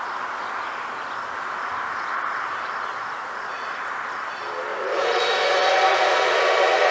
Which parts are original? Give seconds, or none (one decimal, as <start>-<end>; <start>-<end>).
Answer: 0.0-3.2; 3.7-4.7